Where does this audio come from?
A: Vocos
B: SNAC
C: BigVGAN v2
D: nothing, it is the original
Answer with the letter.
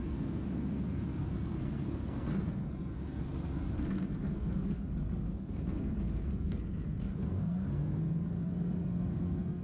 B